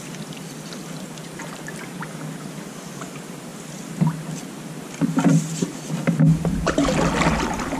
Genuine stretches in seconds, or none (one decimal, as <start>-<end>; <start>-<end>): 0.0-7.8